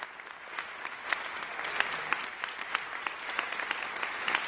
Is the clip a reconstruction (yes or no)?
no